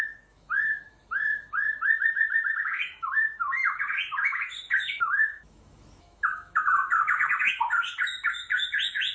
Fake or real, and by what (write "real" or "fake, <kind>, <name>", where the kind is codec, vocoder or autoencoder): fake, autoencoder, DAC-VAE